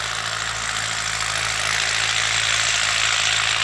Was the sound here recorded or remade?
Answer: recorded